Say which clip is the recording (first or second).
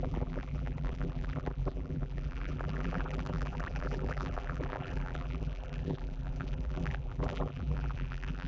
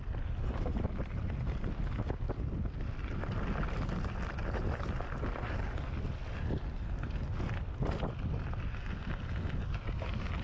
second